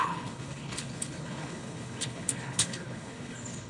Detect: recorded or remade remade